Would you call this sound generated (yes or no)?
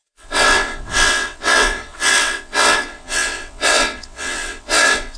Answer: yes